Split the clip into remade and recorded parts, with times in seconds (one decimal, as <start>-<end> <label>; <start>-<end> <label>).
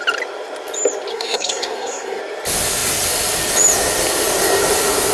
0.0-1.1 recorded; 1.1-2.2 remade; 2.2-5.1 recorded